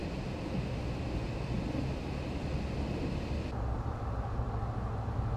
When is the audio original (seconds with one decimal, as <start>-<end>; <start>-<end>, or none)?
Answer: 0.5-5.4